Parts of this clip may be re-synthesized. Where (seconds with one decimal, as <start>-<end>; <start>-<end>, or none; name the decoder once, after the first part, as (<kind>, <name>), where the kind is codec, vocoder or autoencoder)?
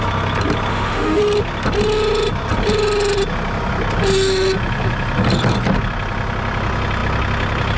0.7-1.2 (autoencoder, DAC-VAE)